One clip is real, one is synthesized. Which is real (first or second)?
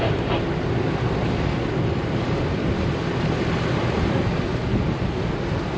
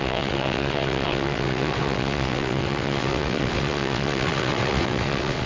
first